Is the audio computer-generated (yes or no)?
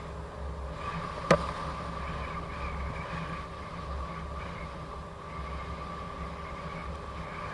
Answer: no